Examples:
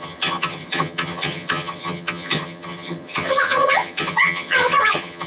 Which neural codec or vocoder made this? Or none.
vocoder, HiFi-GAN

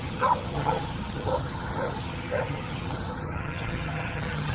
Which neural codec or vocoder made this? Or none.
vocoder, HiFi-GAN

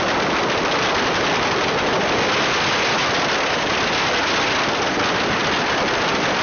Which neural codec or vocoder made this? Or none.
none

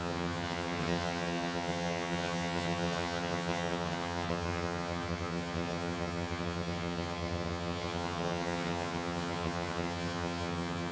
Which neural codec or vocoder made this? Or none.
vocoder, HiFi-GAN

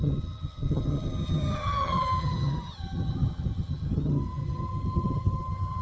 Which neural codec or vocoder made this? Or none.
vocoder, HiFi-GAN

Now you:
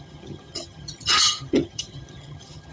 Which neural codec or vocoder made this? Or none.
vocoder, HiFi-GAN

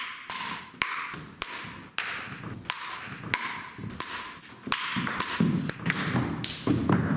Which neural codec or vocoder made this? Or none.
none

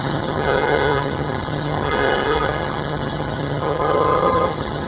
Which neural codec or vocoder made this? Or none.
vocoder, HiFi-GAN